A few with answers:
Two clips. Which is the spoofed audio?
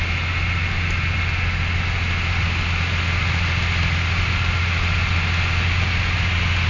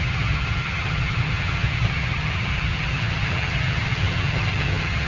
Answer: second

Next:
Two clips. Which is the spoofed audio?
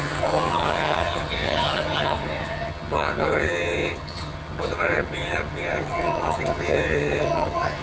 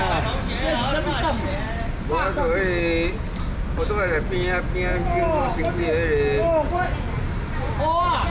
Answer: first